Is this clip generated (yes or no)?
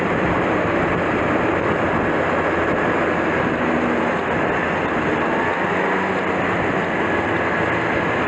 no